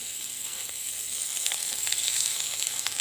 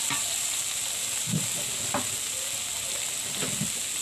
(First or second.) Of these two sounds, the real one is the second